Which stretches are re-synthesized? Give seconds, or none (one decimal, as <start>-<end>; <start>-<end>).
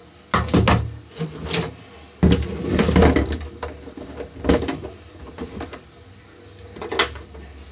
none